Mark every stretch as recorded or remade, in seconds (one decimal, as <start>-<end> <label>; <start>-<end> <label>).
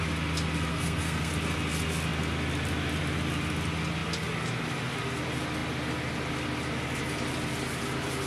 0.0-0.7 recorded; 0.7-1.3 remade; 1.3-8.3 recorded